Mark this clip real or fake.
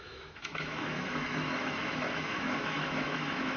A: fake